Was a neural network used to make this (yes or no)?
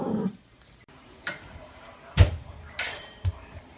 yes